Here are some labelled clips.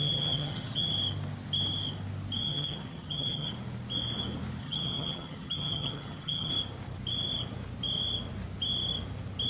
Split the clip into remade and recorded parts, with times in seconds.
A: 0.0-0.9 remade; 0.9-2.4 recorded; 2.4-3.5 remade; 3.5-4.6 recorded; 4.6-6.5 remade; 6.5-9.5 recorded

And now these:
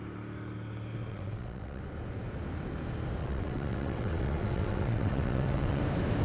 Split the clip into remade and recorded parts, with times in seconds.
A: 0.0-1.1 recorded; 1.1-1.8 remade; 1.8-3.2 recorded; 3.2-5.8 remade; 5.8-6.2 recorded

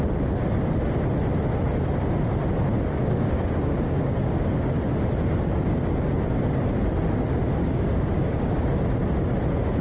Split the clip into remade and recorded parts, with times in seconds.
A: 0.0-2.9 recorded; 2.9-4.8 remade; 4.8-7.6 recorded; 7.6-8.6 remade; 8.6-9.8 recorded